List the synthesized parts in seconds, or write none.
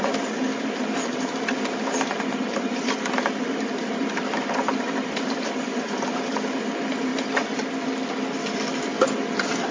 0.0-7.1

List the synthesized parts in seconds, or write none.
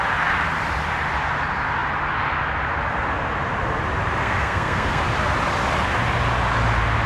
4.2-5.0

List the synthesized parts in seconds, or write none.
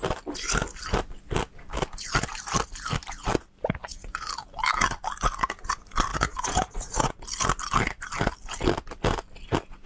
3.8-4.3; 6.1-7.1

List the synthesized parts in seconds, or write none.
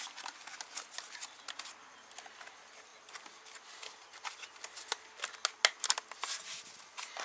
none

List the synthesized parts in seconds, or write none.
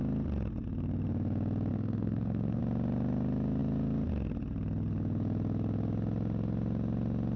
1.7-2.6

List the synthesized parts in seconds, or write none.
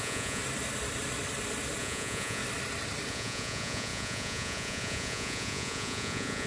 0.0-0.4; 1.8-2.4; 3.1-6.5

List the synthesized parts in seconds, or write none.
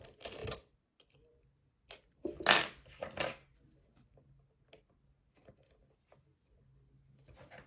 none